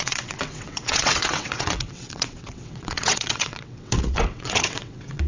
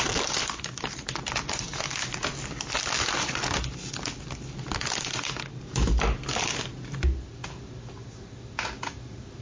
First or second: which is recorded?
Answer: second